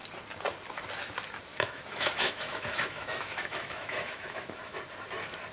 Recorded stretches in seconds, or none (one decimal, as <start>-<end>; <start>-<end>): 0.0-1.5; 4.8-5.5